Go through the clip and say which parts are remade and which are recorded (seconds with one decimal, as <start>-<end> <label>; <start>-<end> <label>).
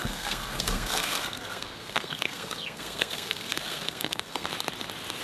0.0-4.5 remade; 4.5-5.2 recorded